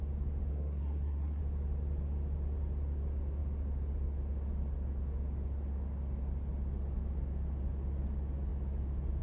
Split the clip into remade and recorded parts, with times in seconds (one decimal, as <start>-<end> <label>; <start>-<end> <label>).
0.0-0.5 recorded; 0.5-1.4 remade; 1.4-9.2 recorded